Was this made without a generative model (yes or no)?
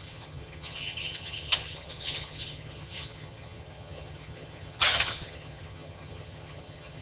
no